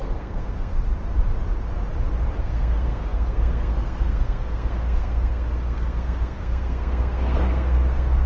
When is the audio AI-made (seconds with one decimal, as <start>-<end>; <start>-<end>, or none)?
0.0-0.7; 2.4-8.3